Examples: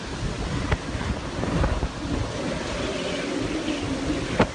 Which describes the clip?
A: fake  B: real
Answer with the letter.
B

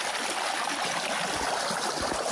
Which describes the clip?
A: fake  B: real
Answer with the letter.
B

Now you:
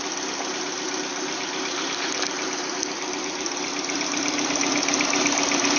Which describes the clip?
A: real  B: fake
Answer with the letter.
A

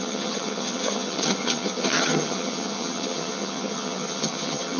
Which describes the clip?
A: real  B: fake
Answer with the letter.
B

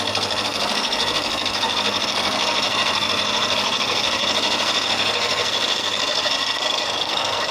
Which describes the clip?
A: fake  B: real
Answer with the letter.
A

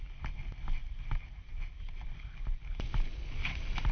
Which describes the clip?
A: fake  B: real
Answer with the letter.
B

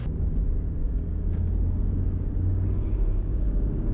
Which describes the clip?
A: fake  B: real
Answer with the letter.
A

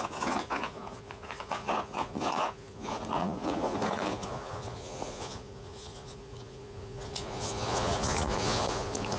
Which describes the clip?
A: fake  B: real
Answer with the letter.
A